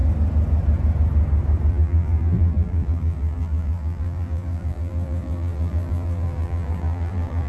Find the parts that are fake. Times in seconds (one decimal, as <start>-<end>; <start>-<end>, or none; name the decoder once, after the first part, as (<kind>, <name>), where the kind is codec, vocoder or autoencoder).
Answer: 1.7-7.5 (vocoder, BigVGAN v2)